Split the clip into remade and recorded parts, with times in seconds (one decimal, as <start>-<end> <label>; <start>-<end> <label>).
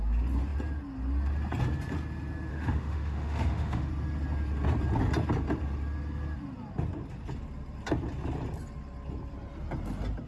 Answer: 0.0-2.5 recorded; 2.5-3.9 remade; 3.9-10.3 recorded